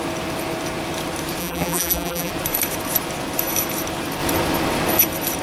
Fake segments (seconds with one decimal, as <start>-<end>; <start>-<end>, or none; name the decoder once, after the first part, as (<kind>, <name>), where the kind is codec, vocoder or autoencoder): 1.4-2.3 (vocoder, BigVGAN v2)